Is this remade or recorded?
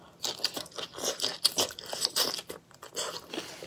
recorded